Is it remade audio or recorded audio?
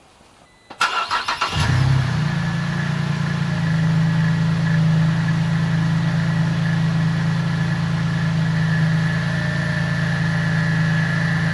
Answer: recorded